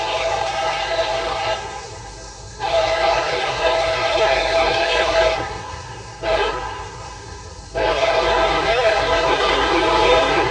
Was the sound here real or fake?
fake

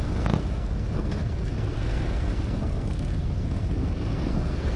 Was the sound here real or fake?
fake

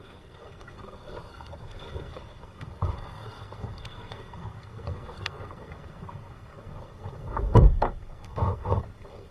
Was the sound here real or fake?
fake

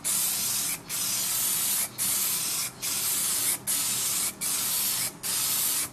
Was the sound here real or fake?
real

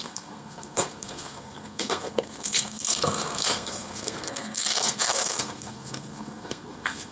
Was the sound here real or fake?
fake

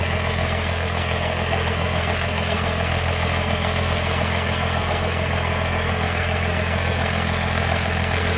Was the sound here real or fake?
fake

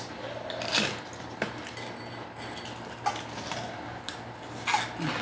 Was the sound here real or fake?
real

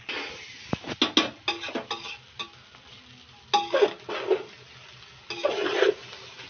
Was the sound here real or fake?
real